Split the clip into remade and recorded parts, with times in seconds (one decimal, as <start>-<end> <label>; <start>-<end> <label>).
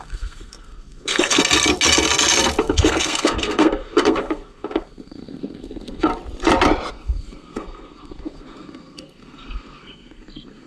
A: 0.0-1.4 remade; 1.4-2.6 recorded; 2.6-6.1 remade; 6.1-6.9 recorded; 6.9-10.7 remade